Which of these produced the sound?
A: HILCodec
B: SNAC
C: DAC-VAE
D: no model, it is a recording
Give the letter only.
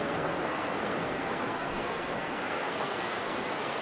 B